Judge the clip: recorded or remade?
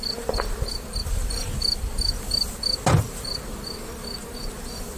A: recorded